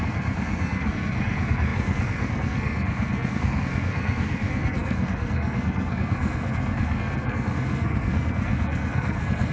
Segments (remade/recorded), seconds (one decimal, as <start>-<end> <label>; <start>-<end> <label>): 0.0-9.5 remade